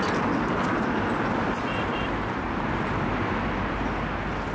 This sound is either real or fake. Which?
real